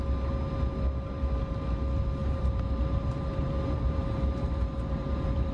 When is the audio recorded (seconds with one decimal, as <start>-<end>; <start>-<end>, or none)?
0.0-2.2